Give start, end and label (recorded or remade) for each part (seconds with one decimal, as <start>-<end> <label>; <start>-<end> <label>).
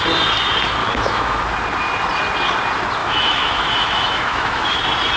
0.0-0.8 recorded; 0.8-1.4 remade; 1.4-3.0 recorded; 3.0-4.8 remade; 4.8-5.2 recorded